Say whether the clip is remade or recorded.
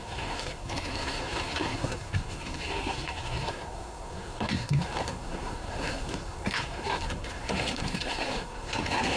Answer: remade